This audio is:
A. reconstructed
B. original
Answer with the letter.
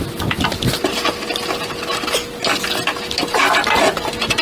B